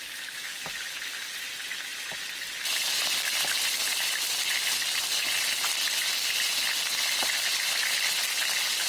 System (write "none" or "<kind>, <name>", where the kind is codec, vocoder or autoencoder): none